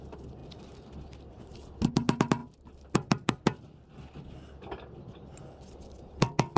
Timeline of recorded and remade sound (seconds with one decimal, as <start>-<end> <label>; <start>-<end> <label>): 0.0-6.6 recorded